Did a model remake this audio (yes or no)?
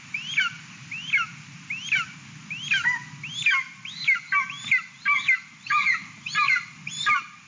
no